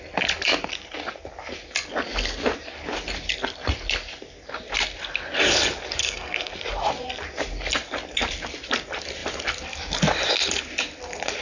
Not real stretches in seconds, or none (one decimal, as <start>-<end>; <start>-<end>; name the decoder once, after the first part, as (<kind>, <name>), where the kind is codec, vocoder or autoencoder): 6.0-6.5 (codec, SNAC)